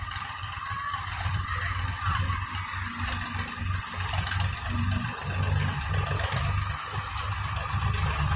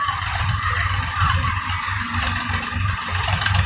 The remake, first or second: second